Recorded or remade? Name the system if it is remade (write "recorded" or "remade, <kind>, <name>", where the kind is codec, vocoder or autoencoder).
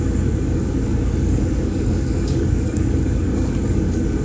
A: remade, codec, DAC